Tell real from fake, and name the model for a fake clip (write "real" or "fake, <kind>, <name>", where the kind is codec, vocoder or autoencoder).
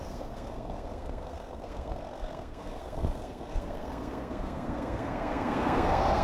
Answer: fake, codec, SNAC